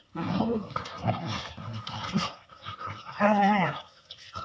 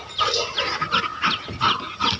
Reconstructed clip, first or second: first